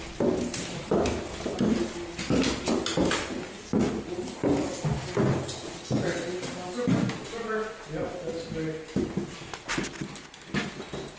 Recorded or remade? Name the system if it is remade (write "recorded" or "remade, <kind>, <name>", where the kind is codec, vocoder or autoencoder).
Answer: recorded